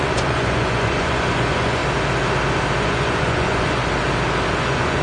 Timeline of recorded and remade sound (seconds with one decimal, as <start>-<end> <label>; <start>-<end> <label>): 0.0-1.8 remade; 1.8-2.8 recorded; 2.8-3.8 remade; 3.8-4.6 recorded; 4.6-5.0 remade